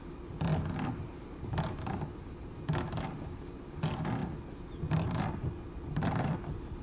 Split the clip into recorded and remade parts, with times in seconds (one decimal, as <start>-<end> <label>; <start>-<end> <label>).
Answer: 0.0-6.8 recorded